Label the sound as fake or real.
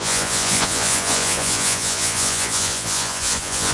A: fake